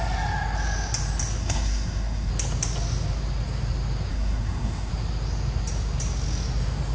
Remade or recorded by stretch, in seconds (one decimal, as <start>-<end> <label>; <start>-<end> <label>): 0.0-1.4 recorded; 1.4-2.3 remade; 2.3-4.1 recorded; 4.1-4.9 remade; 4.9-6.9 recorded